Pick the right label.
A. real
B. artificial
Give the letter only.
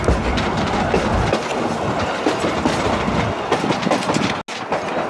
A